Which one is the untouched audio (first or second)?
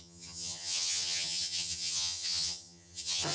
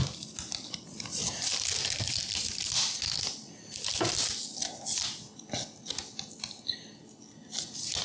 second